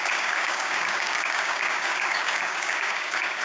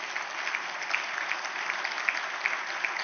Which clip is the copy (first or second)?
first